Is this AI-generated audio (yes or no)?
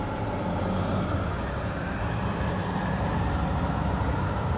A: yes